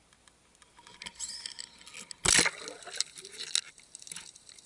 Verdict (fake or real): real